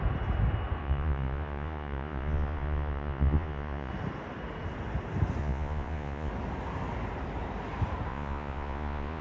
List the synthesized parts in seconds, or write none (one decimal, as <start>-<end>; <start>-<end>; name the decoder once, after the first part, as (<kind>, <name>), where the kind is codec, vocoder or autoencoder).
0.8-3.9 (vocoder, Vocos); 5.4-6.3; 8.1-9.2